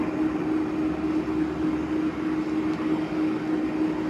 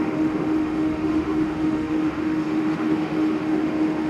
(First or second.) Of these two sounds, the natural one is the first